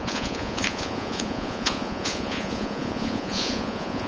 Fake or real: fake